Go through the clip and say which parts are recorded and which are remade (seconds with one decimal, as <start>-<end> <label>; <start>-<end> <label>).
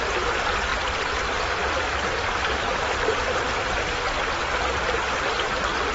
0.0-0.7 recorded; 0.7-4.2 remade; 4.2-5.9 recorded